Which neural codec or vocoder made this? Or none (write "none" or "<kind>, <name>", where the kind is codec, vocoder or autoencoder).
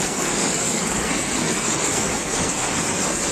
codec, SNAC